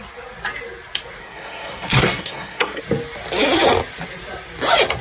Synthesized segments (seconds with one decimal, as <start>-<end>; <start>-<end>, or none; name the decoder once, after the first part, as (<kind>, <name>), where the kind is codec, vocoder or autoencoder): 1.2-2.8 (codec, SNAC)